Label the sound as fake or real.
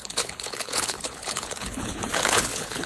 fake